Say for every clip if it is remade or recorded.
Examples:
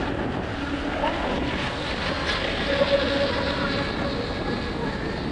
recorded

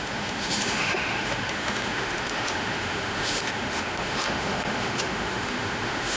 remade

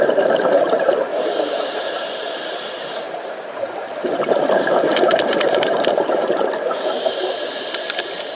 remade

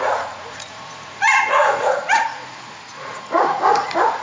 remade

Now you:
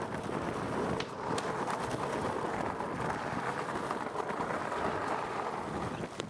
recorded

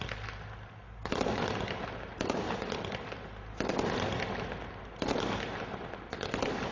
recorded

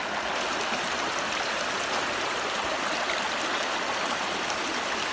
recorded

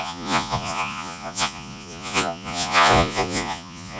remade